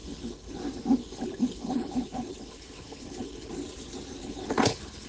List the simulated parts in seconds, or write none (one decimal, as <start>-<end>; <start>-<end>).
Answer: 0.0-0.6; 1.0-3.5; 4.2-5.1